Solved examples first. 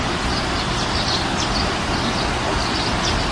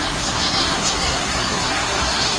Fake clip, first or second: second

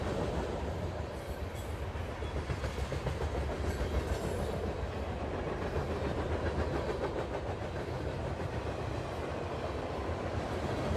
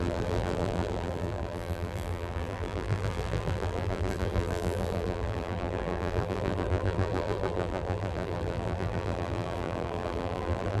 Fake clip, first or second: second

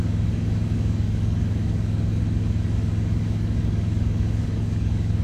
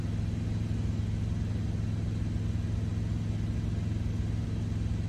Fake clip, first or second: first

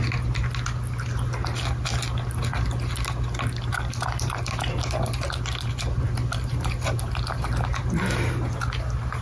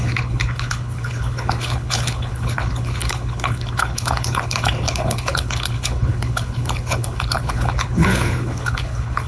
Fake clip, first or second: second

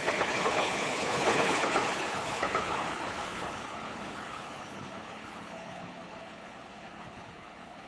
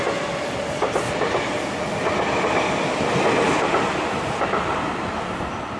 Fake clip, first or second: first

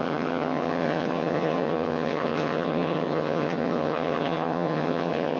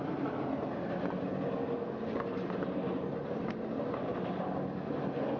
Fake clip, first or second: first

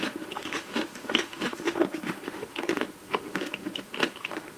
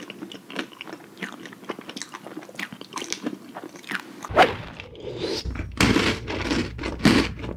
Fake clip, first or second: first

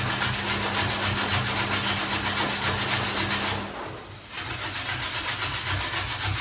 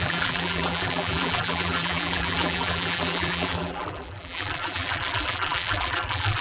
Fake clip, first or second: second